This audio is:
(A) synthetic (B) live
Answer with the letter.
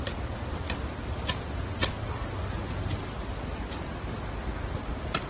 B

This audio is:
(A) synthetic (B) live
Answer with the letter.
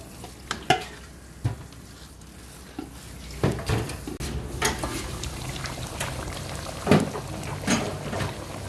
B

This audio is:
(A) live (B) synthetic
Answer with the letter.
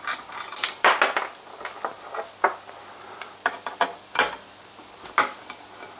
A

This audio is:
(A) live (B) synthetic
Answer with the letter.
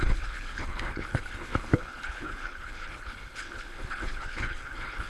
B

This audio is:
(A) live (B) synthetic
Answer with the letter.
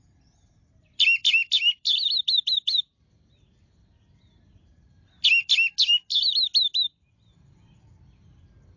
A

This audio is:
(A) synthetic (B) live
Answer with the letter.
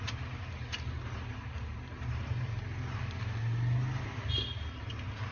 B